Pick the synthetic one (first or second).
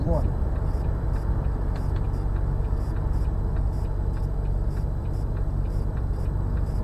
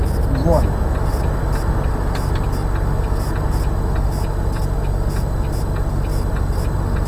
first